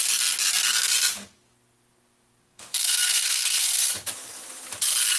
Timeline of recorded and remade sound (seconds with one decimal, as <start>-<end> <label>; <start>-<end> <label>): 0.0-2.4 recorded; 2.4-3.6 remade; 3.6-5.2 recorded